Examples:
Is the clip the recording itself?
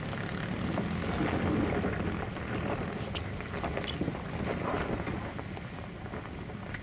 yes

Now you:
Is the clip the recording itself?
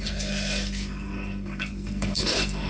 no